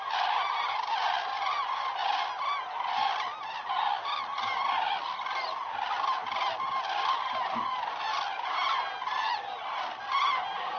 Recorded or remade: recorded